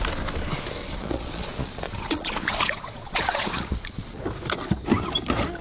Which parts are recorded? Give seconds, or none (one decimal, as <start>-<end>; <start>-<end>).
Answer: 0.0-0.8; 4.2-5.6

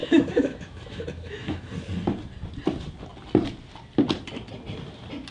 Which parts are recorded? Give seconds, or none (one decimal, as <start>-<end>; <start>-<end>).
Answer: 1.7-5.3

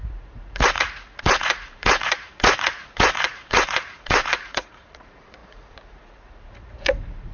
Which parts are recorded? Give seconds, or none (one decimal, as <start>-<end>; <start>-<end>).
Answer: none

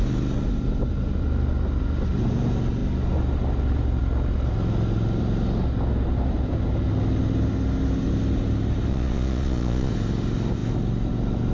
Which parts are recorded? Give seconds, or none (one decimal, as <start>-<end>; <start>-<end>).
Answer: 0.0-8.9; 9.9-11.5

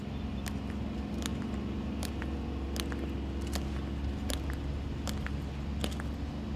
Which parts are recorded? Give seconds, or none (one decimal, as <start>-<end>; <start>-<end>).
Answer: 0.0-1.3; 2.2-6.6

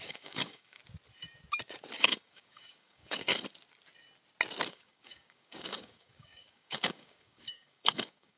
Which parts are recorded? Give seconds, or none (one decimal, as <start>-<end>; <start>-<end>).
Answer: 0.8-2.0; 3.3-4.7